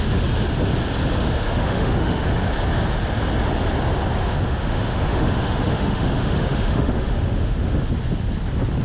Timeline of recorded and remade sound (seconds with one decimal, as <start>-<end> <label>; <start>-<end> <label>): 0.0-1.2 recorded; 1.2-2.3 remade; 2.3-4.2 recorded; 4.2-7.9 remade; 7.9-8.8 recorded